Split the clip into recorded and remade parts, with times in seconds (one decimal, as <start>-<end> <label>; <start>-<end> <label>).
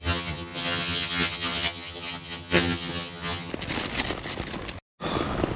0.0-3.5 remade; 3.5-5.6 recorded